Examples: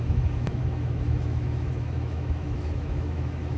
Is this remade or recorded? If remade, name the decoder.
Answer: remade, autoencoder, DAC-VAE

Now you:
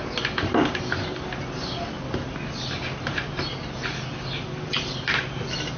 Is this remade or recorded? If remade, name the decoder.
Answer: recorded